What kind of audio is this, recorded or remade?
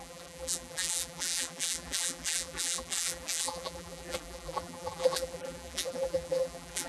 remade